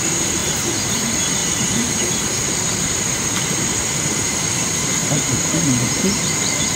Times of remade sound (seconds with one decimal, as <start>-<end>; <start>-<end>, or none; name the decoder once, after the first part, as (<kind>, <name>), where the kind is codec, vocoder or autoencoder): 0.0-6.8 (vocoder, BigVGAN v2)

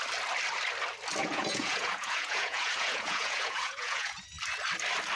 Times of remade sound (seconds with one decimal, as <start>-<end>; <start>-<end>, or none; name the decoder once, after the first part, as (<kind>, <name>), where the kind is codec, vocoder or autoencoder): 1.2-4.3 (vocoder, Vocos)

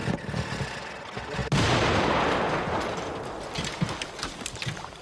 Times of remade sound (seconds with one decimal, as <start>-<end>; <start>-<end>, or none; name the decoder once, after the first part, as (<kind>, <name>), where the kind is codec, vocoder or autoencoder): none

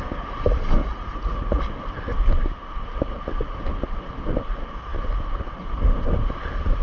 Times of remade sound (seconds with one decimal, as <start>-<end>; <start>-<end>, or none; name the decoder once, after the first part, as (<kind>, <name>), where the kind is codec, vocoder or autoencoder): 0.8-1.6 (vocoder, Vocos)

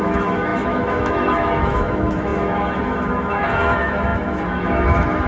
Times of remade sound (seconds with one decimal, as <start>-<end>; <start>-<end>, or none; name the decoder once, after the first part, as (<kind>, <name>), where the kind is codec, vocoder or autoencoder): 0.0-5.3 (autoencoder, DAC-VAE)

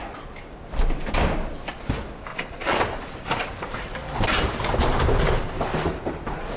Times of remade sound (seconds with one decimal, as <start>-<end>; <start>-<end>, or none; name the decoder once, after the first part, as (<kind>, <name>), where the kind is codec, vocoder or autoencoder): 2.3-3.7 (vocoder, Vocos)

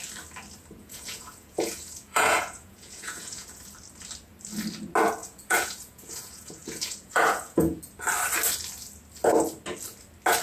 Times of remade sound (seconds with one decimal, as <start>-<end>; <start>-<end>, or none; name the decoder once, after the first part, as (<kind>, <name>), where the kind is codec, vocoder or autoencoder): 0.8-3.6 (vocoder, Vocos); 5.2-7.8